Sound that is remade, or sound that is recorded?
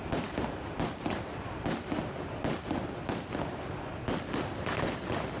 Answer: remade